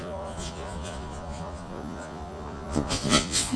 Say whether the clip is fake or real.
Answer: fake